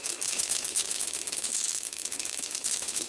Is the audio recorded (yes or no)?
no